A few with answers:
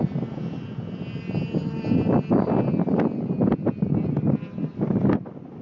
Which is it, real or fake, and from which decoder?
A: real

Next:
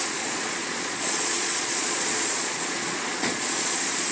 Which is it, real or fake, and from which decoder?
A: fake, vocoder, Vocos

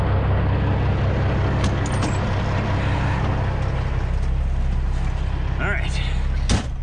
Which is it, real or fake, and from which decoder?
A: real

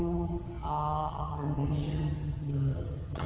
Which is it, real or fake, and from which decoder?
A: fake, vocoder, HiFi-GAN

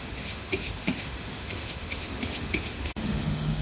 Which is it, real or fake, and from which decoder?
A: fake, autoencoder, DAC-VAE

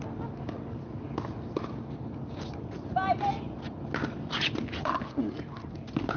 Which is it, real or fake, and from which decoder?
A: real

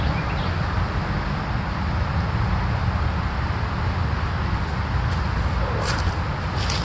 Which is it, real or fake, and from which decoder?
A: real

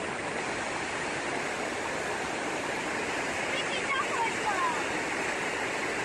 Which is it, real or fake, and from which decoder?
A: fake, vocoder, BigVGAN v2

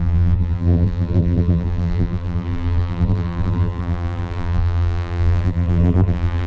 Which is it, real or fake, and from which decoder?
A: fake, vocoder, BigVGAN v2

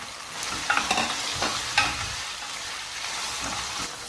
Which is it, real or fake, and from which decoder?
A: fake, vocoder, BigVGAN v2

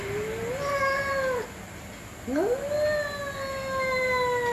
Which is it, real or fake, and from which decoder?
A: real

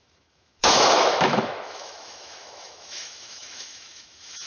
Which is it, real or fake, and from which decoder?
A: fake, autoencoder, DAC-VAE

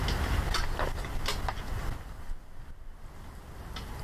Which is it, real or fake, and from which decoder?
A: real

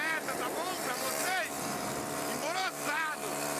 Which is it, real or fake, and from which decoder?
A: fake, vocoder, BigVGAN v2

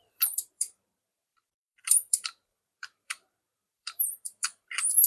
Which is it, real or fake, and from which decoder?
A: fake, vocoder, BigVGAN v2